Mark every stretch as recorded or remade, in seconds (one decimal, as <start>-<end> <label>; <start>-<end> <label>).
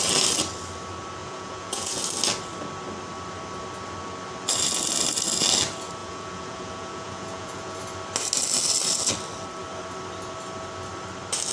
0.0-1.2 recorded; 1.2-2.0 remade; 2.0-6.0 recorded; 6.0-7.8 remade; 7.8-11.5 recorded